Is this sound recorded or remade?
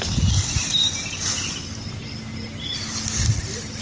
recorded